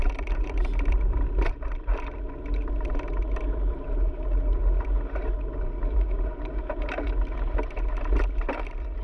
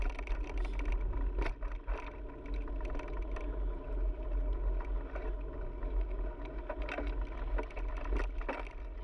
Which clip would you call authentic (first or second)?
second